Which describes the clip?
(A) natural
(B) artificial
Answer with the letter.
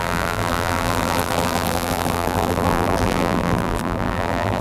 B